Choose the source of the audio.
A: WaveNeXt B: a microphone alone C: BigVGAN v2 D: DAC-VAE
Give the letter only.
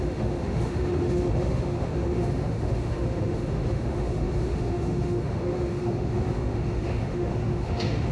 D